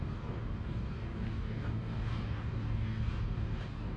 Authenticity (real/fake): fake